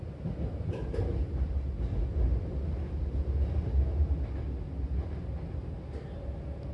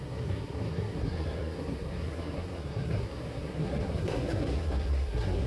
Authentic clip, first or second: first